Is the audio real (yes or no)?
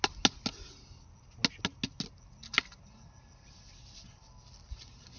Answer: yes